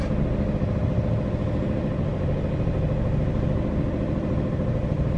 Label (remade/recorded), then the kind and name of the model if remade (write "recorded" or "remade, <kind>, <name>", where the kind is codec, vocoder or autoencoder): recorded